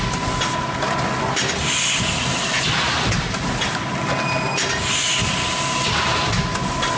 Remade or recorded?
recorded